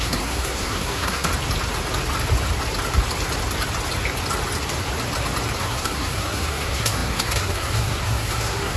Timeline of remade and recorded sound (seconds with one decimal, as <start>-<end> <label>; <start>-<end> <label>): 0.0-1.3 remade; 1.3-5.6 recorded; 5.6-8.8 remade